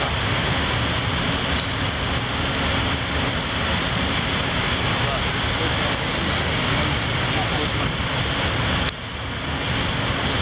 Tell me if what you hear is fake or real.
real